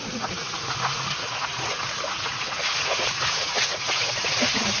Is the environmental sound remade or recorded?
remade